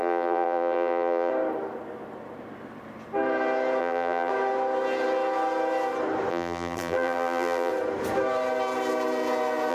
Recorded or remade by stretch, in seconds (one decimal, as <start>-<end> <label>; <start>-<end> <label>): 0.0-1.3 remade; 1.3-3.8 recorded; 3.8-4.3 remade; 4.3-6.3 recorded; 6.3-7.7 remade; 7.7-9.7 recorded